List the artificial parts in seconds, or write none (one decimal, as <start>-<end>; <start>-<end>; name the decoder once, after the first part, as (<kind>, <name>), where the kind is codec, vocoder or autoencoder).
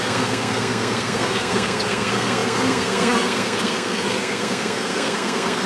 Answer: 0.0-5.7 (codec, SNAC)